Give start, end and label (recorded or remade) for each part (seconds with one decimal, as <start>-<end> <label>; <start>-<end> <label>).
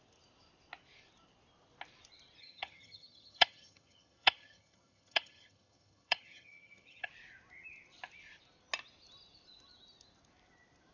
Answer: 0.0-2.4 recorded; 2.4-7.1 remade; 7.1-10.9 recorded